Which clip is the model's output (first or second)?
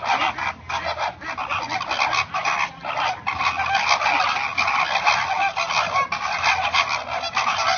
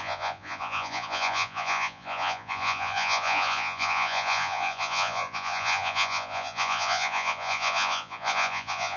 second